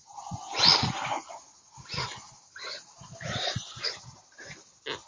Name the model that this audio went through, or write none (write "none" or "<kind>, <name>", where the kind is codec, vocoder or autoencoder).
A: none